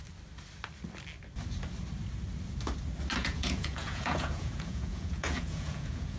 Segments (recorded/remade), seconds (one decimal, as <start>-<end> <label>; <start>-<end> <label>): 0.0-3.2 recorded; 3.2-6.2 remade